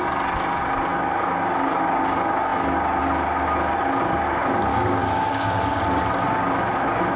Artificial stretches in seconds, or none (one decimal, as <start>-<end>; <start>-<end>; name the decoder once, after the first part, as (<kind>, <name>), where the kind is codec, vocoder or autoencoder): 4.7-5.8 (codec, DAC)